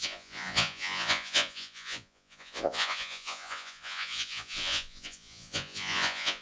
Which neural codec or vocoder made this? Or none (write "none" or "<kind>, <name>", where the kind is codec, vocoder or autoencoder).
vocoder, Vocos